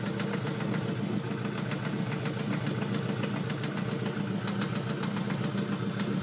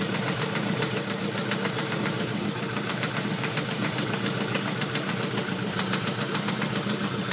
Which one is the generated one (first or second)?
second